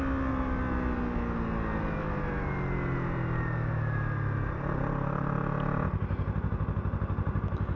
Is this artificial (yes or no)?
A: no